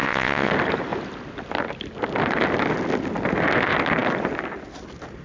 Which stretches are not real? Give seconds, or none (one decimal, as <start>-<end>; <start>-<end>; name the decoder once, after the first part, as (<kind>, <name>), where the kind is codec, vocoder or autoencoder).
0.0-0.5 (vocoder, WaveNeXt)